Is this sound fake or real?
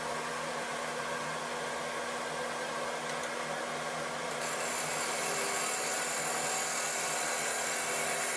real